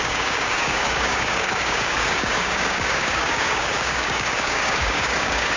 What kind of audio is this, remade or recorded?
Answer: remade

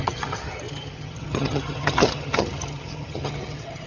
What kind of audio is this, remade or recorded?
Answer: remade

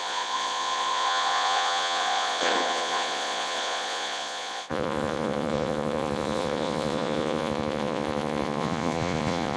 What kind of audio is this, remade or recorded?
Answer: remade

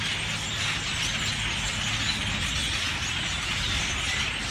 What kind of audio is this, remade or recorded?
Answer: recorded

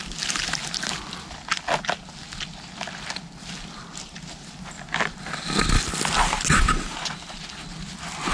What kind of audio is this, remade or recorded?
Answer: recorded